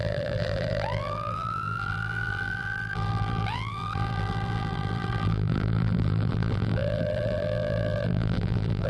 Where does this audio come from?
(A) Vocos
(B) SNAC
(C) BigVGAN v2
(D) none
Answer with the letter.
C